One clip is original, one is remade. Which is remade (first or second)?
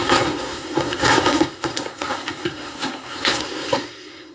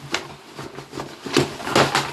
first